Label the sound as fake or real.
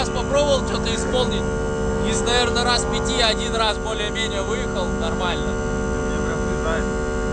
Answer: real